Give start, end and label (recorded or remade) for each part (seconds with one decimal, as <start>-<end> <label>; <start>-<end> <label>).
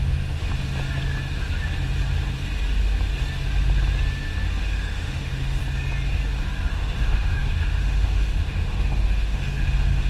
0.0-0.5 remade; 0.5-4.6 recorded; 4.6-5.6 remade; 5.6-6.7 recorded; 6.7-10.1 remade